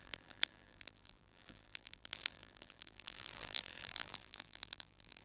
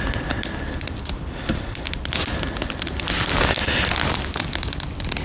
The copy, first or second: first